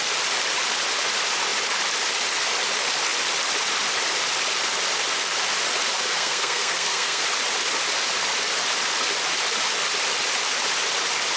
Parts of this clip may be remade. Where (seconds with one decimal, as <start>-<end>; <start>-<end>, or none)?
6.0-7.2

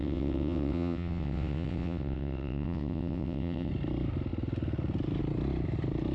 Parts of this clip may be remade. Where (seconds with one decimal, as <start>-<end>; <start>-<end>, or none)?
0.0-3.7

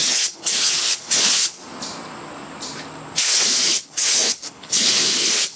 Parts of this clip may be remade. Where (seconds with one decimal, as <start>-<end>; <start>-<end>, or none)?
0.0-1.6; 3.2-5.6